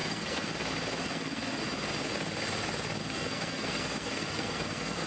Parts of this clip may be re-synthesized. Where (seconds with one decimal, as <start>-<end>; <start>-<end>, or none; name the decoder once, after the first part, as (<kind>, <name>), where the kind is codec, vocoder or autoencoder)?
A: 0.0-0.5 (codec, SNAC); 1.0-1.6; 3.0-5.1